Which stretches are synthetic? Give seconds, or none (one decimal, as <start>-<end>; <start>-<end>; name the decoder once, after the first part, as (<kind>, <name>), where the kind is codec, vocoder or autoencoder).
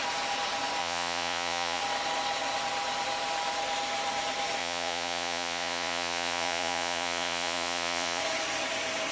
0.8-1.8 (vocoder, Vocos); 4.6-8.2